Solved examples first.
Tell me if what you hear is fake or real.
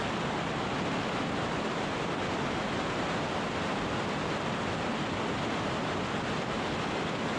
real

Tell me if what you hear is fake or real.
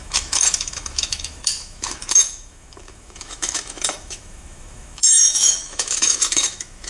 fake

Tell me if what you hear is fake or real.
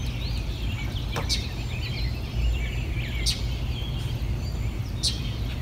real